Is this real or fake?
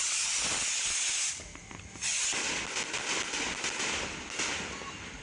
real